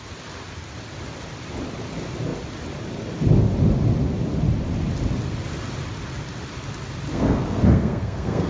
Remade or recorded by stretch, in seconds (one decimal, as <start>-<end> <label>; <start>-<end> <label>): 0.0-7.1 recorded; 7.1-8.5 remade